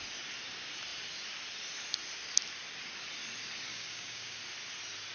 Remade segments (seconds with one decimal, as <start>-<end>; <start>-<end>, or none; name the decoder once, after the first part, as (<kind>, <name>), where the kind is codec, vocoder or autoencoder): 3.7-4.4 (codec, DAC)